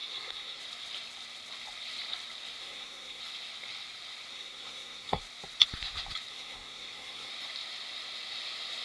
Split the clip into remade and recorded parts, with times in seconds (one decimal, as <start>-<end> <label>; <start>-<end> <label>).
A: 0.0-0.6 remade; 0.6-2.6 recorded; 2.6-3.2 remade; 3.2-4.3 recorded; 4.3-5.2 remade; 5.2-6.3 recorded; 6.3-7.3 remade; 7.3-8.8 recorded